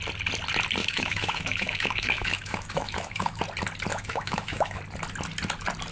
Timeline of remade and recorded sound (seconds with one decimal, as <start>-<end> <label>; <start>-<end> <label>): 0.0-0.8 recorded; 0.8-3.4 remade; 3.4-3.9 recorded; 3.9-4.8 remade; 4.8-5.9 recorded

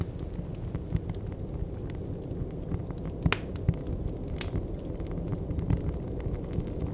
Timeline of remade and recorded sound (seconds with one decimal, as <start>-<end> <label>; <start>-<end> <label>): 0.0-6.9 recorded

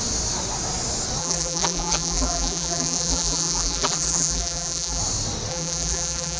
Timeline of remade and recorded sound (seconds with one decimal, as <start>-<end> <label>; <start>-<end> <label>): 0.0-1.2 recorded; 1.2-5.0 remade; 5.0-5.5 recorded; 5.5-6.4 remade

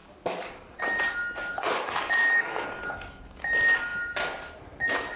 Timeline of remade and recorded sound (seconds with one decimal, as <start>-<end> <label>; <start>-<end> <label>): 0.0-0.8 remade; 0.8-1.5 recorded; 1.5-3.4 remade; 3.4-5.2 recorded

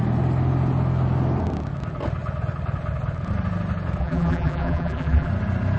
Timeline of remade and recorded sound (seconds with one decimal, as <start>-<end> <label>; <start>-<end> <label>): 0.0-4.0 recorded; 4.0-5.3 remade; 5.3-5.8 recorded

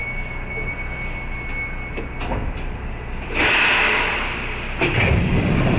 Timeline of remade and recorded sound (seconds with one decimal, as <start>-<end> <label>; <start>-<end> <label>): 0.0-5.8 recorded